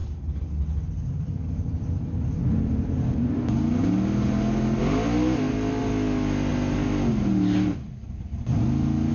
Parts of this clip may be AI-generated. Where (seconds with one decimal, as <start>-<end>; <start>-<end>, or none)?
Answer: none